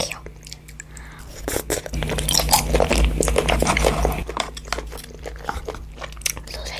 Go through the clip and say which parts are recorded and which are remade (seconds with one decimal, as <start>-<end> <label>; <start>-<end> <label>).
0.0-6.8 recorded